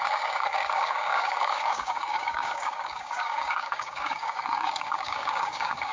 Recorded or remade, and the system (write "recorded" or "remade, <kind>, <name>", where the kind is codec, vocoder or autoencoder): remade, codec, DAC